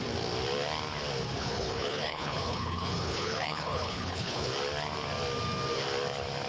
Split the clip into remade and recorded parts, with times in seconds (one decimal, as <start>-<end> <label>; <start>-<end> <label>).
0.0-1.4 recorded; 1.4-4.5 remade; 4.5-6.5 recorded